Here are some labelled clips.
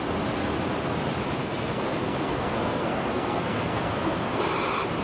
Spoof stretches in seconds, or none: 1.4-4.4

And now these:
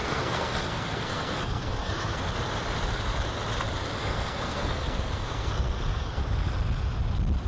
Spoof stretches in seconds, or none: 0.0-2.2; 4.0-6.2